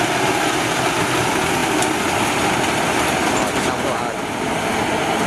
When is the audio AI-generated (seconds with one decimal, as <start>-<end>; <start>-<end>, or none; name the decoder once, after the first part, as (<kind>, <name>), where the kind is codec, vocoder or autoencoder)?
none